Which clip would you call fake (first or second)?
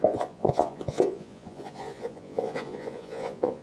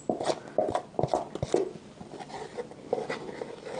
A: first